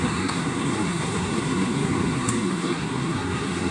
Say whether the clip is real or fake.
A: fake